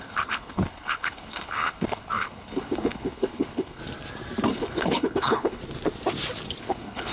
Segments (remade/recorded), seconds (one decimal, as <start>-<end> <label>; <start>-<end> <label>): 0.0-3.8 remade; 3.8-4.5 recorded; 4.5-5.6 remade; 5.6-6.6 recorded; 6.6-7.1 remade